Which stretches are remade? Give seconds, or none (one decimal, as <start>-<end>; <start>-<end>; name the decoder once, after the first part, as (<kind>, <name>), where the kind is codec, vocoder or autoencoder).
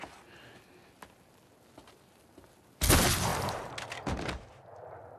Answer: none